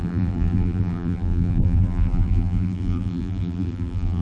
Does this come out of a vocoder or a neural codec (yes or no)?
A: yes